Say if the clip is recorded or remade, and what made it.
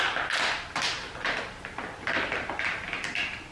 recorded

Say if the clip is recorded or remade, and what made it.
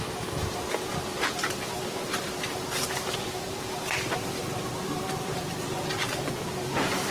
remade, vocoder, BigVGAN v2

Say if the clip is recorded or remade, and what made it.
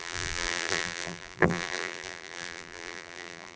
remade, vocoder, BigVGAN v2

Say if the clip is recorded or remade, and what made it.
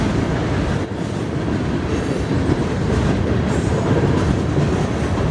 remade, vocoder, BigVGAN v2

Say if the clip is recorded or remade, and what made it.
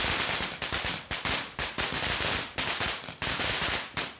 recorded